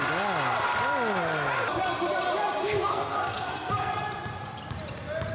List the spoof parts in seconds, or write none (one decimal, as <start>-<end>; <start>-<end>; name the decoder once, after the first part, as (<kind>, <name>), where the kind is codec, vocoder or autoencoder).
2.6-3.9 (codec, SNAC)